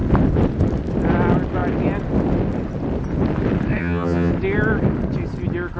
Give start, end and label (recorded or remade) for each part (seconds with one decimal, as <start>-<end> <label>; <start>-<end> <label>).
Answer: 0.0-3.8 recorded; 3.8-4.3 remade; 4.3-5.8 recorded